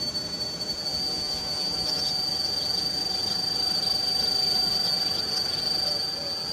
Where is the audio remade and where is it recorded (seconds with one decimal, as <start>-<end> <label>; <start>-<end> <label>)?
0.0-1.1 recorded; 1.1-2.0 remade; 2.0-6.5 recorded